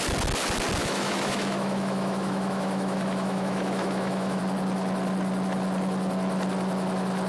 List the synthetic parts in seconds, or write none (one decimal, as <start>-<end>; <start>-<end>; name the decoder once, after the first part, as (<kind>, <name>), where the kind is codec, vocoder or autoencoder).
0.8-4.4 (autoencoder, DAC-VAE)